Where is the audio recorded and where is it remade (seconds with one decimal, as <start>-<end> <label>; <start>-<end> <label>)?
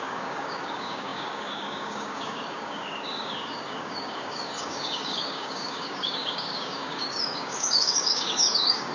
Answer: 0.0-8.9 remade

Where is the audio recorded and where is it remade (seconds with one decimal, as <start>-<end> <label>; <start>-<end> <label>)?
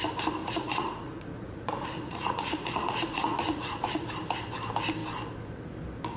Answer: 0.0-0.4 recorded; 0.4-4.1 remade; 4.1-6.2 recorded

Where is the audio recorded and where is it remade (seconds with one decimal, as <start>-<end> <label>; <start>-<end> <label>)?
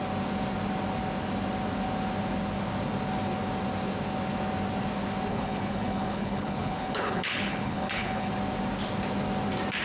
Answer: 0.0-5.3 recorded; 5.3-8.3 remade; 8.3-9.8 recorded